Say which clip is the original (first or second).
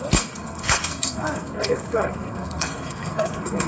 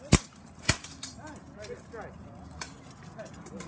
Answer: second